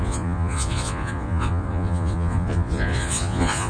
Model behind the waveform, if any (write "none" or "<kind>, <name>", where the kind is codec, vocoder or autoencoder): vocoder, Vocos